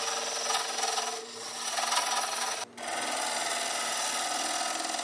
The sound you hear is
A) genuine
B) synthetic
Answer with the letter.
A